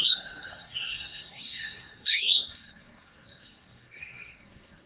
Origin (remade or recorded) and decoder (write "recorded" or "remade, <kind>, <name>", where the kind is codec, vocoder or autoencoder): remade, codec, SNAC